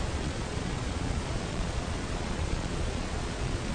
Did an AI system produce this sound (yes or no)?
yes